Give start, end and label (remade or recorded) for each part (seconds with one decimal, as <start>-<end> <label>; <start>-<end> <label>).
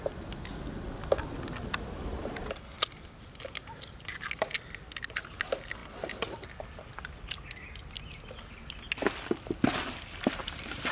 0.0-10.9 recorded